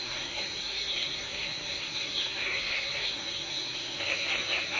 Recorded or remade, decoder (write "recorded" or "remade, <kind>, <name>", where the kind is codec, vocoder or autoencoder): remade, codec, SNAC